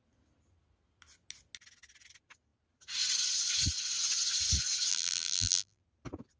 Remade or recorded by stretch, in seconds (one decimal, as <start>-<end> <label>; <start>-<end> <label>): 0.0-4.9 recorded; 4.9-5.8 remade; 5.8-6.4 recorded